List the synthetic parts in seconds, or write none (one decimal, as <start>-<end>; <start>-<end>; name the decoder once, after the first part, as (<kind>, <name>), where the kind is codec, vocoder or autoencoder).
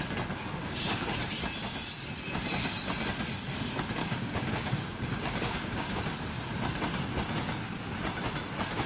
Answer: 0.6-1.1 (codec, DAC); 4.0-6.0